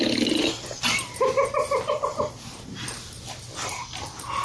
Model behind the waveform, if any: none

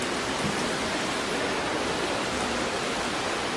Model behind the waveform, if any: none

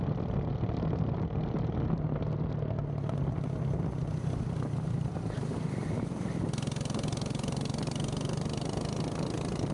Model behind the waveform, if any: none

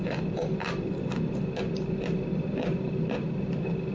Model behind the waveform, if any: none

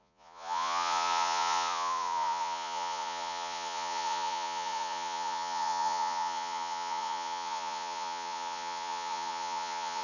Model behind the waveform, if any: vocoder, Vocos